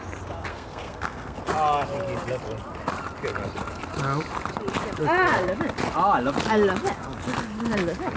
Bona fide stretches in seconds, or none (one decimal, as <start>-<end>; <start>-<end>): 0.0-0.5; 1.4-8.2